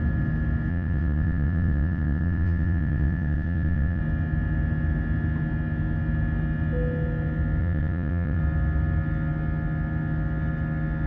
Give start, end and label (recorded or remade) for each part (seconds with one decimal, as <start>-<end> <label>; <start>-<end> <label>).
0.0-0.7 recorded; 0.7-4.0 remade; 4.0-7.6 recorded; 7.6-8.4 remade; 8.4-11.1 recorded